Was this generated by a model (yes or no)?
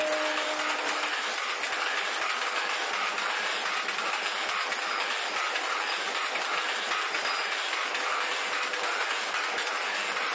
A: no